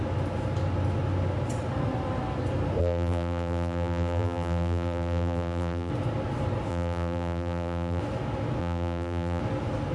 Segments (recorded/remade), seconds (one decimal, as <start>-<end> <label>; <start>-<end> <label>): 0.0-2.8 recorded; 2.8-5.9 remade; 5.9-6.7 recorded; 6.7-8.0 remade; 8.0-8.6 recorded; 8.6-9.4 remade; 9.4-9.9 recorded